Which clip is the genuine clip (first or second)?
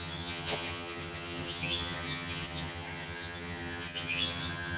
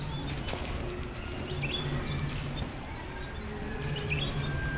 second